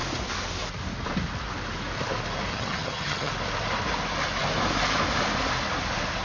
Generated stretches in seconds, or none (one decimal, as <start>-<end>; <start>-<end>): 2.5-3.3